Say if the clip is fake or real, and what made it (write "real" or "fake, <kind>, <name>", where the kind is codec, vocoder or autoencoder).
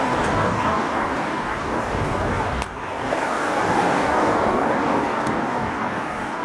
fake, codec, DAC